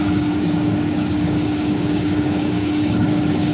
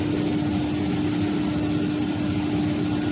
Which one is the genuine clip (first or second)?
second